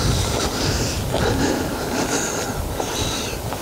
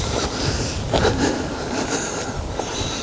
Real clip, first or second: first